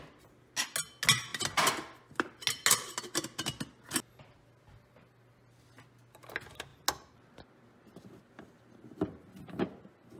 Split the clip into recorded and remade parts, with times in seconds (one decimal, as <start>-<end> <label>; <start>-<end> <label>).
0.0-10.2 recorded